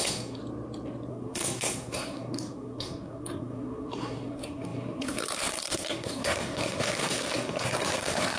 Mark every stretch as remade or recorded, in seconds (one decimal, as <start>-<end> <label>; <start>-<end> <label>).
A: 0.0-0.4 remade; 0.4-1.1 recorded; 1.1-8.4 remade